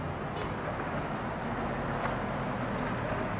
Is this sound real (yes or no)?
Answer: yes